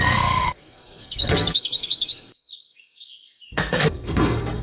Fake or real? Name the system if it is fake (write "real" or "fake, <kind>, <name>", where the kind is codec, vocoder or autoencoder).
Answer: fake, codec, SNAC